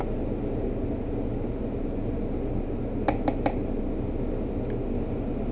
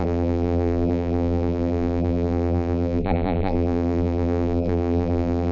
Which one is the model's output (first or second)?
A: second